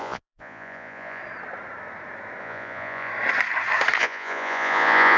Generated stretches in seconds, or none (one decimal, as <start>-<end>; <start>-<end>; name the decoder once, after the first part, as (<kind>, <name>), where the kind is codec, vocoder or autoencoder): 0.0-1.2 (vocoder, Vocos); 2.4-3.1; 4.0-5.2